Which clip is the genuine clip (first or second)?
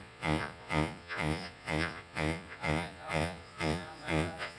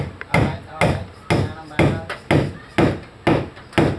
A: second